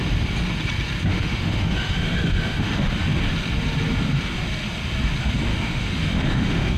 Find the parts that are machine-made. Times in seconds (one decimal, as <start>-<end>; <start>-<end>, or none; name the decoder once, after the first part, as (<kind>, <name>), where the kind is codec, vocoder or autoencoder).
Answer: 1.1-2.9 (autoencoder, DAC-VAE); 5.5-6.8